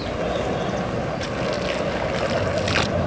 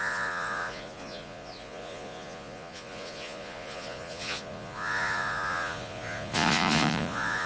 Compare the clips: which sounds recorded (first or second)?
first